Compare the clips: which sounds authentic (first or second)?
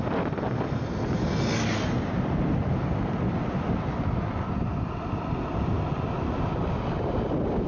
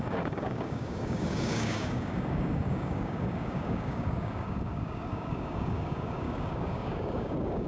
first